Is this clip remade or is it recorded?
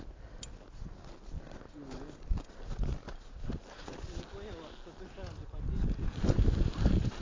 recorded